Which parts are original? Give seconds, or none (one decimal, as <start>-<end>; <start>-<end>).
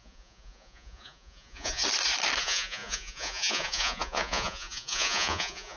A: 1.8-2.4